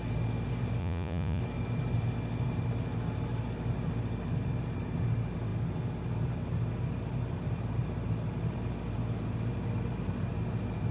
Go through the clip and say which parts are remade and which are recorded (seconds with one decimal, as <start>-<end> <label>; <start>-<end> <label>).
0.0-0.8 recorded; 0.8-1.4 remade; 1.4-10.9 recorded